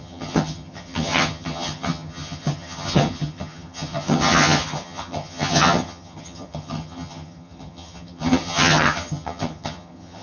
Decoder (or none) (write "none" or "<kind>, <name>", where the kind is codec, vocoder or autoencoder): vocoder, HiFi-GAN